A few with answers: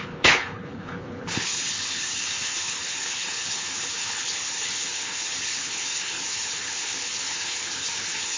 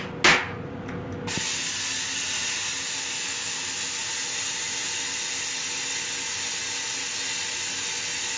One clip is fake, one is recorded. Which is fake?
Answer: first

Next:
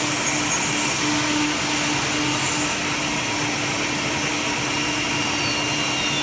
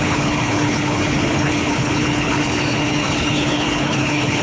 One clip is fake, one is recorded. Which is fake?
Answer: second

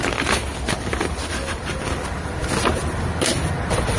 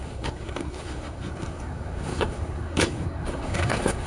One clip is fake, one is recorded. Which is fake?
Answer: second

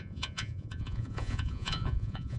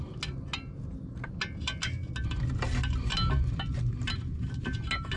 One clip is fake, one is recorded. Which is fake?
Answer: first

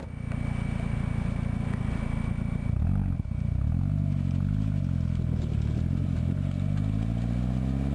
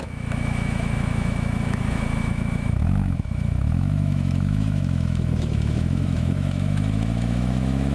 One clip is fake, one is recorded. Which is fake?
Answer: second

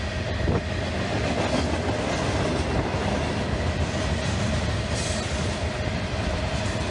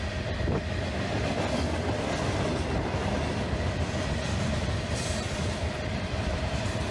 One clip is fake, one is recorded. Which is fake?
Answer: second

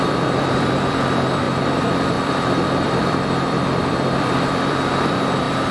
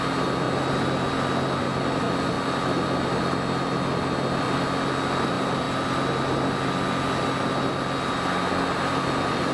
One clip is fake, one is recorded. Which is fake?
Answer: first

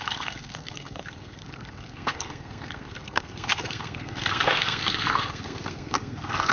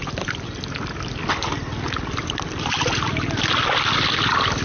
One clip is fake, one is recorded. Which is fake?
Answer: first